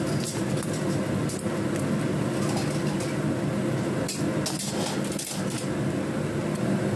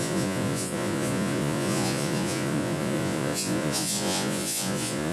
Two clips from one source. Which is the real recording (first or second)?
first